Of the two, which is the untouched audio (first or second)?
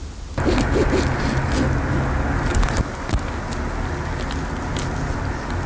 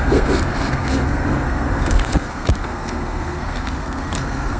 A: first